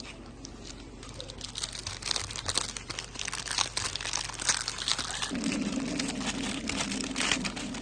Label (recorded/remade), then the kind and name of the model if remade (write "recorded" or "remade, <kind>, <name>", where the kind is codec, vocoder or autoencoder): recorded